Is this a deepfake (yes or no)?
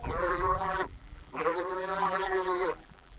yes